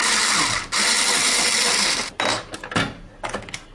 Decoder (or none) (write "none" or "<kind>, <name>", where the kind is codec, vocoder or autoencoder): none